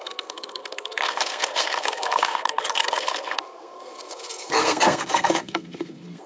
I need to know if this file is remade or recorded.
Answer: remade